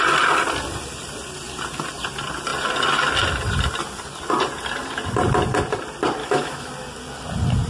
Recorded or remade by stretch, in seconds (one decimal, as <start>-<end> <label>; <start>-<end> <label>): 0.0-6.2 recorded; 6.2-6.7 remade; 6.7-7.7 recorded

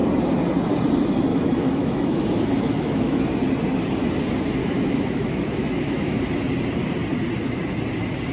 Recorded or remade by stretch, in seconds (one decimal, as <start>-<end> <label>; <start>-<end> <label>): 0.0-1.3 recorded; 1.3-3.2 remade; 3.2-4.6 recorded; 4.6-6.2 remade; 6.2-8.3 recorded

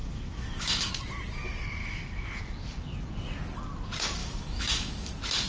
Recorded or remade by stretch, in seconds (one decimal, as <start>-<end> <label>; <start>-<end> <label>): 0.0-0.9 remade; 0.9-1.8 recorded; 1.8-2.4 remade; 2.4-4.2 recorded; 4.2-5.1 remade; 5.1-5.5 recorded

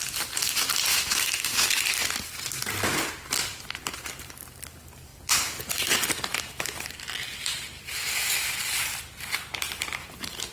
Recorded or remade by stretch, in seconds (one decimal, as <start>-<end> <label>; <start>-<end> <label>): 0.0-0.9 recorded; 0.9-1.7 remade; 1.7-10.5 recorded